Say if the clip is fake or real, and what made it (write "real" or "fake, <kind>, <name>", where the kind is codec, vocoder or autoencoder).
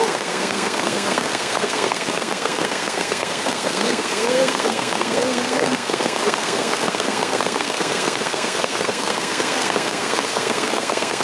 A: fake, codec, SNAC